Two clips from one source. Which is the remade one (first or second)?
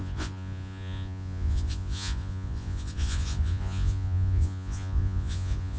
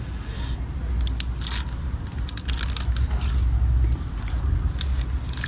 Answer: first